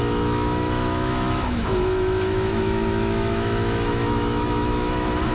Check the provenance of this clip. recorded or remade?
remade